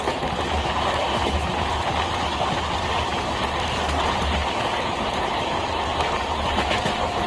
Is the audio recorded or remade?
recorded